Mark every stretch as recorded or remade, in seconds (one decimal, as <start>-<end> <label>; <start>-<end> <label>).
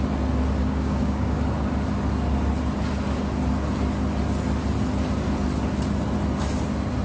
0.0-0.6 recorded; 0.6-1.4 remade; 1.4-7.0 recorded